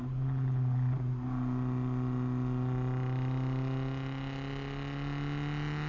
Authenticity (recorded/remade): recorded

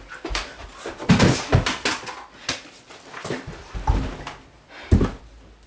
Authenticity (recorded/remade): recorded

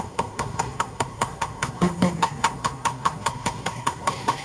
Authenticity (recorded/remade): remade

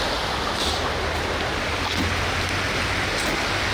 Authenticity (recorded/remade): recorded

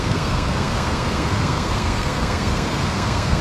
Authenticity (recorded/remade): remade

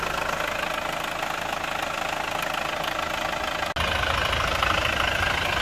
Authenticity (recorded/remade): recorded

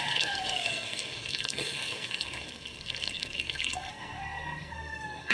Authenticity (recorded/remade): remade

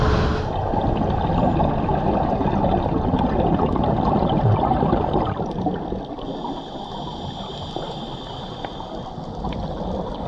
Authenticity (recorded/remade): recorded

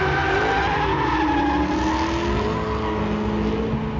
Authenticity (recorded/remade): recorded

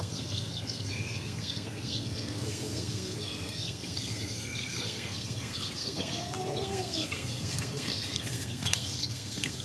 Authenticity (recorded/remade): remade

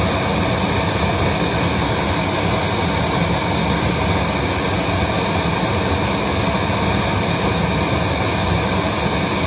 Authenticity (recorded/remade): recorded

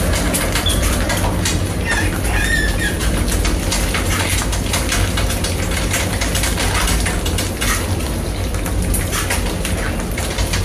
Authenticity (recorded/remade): recorded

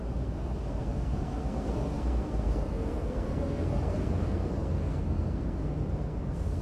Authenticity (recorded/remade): remade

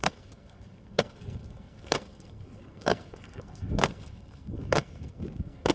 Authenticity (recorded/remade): remade